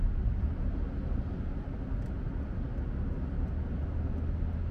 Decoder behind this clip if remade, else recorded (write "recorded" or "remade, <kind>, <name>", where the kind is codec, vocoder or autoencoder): recorded